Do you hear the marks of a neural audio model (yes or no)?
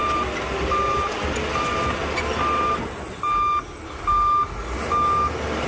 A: no